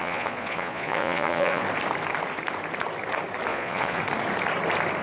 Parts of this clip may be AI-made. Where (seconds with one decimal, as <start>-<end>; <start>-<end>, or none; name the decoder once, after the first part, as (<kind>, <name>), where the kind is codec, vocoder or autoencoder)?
0.0-1.6 (vocoder, Vocos); 3.5-4.0